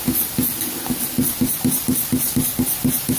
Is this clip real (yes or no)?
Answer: yes